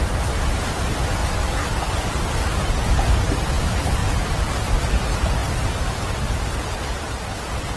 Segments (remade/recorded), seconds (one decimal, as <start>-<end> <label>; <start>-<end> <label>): 0.0-4.0 recorded; 4.0-4.8 remade; 4.8-7.8 recorded